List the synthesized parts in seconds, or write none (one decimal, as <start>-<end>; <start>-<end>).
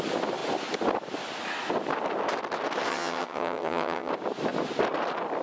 2.9-4.1